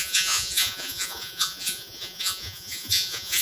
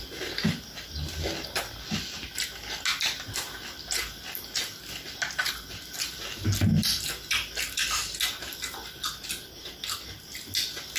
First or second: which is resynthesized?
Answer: first